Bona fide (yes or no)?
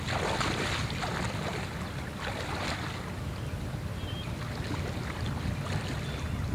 yes